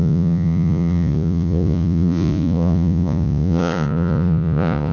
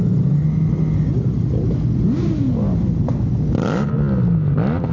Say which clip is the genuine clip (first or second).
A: second